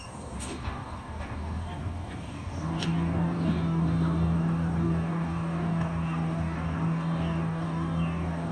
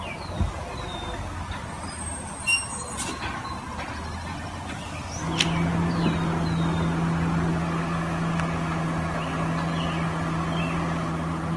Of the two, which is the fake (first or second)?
first